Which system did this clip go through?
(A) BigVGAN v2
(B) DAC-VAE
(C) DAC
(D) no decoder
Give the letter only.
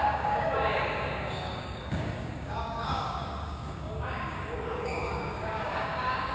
C